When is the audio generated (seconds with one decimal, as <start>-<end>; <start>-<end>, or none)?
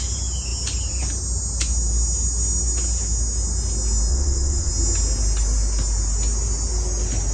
4.1-4.7